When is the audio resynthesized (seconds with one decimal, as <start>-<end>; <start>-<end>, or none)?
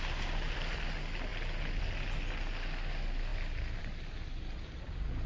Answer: none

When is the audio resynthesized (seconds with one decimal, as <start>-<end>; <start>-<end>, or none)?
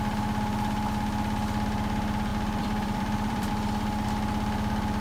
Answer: 2.3-3.5